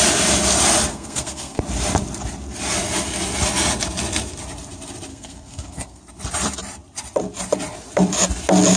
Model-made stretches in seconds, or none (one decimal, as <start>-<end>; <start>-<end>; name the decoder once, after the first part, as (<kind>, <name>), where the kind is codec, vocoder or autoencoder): 0.9-1.6 (codec, SNAC); 5.1-6.0